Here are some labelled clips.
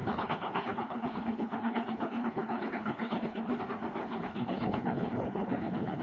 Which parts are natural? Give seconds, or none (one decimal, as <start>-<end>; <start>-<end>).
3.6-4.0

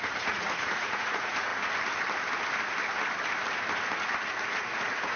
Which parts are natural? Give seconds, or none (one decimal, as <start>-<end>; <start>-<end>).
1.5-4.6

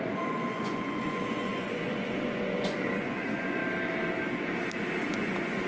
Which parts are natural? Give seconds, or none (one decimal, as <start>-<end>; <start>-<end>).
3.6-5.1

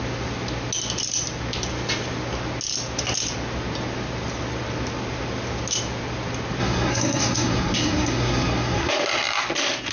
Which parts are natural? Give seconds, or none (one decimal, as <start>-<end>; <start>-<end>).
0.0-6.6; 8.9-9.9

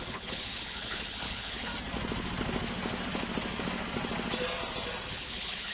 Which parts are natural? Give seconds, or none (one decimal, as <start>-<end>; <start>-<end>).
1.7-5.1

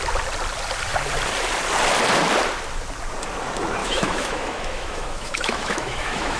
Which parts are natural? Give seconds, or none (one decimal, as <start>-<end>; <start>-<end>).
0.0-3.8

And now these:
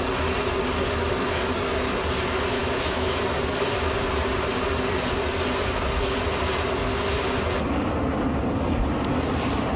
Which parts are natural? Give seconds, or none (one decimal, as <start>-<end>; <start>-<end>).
0.0-2.6; 3.2-9.8

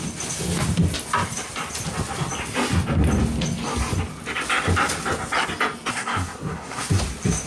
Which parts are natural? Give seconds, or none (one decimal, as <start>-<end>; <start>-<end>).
0.0-5.9; 7.0-7.5